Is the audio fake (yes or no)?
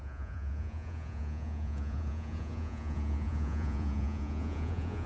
yes